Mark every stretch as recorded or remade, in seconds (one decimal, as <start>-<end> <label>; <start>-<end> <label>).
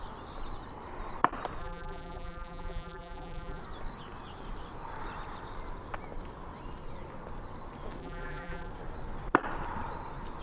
0.0-1.6 recorded; 1.6-3.6 remade; 3.6-8.0 recorded; 8.0-8.7 remade; 8.7-10.4 recorded